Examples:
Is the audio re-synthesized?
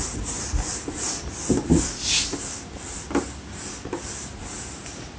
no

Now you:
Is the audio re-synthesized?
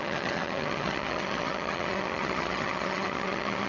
yes